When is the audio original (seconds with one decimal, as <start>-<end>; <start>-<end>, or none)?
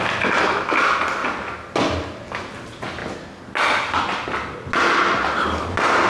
0.0-6.1